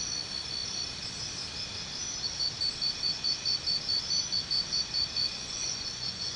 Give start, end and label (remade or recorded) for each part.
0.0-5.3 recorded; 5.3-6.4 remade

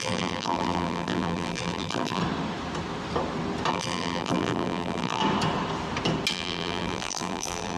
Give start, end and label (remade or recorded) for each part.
0.0-2.2 remade; 2.2-3.7 recorded; 3.7-5.2 remade; 5.2-6.3 recorded; 6.3-7.8 remade